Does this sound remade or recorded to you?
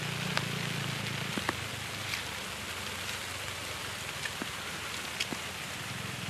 recorded